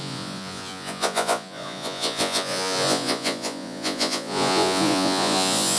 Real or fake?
fake